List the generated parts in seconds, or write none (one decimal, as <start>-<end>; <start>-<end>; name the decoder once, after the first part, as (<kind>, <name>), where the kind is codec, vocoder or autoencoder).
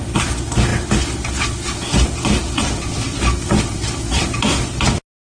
none